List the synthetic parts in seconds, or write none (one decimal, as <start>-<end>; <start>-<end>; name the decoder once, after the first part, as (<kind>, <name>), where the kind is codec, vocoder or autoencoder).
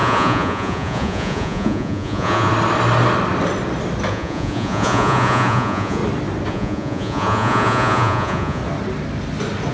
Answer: 0.0-2.5 (vocoder, Vocos); 4.1-6.0; 6.5-8.6